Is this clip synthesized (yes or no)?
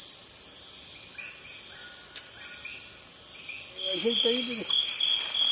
no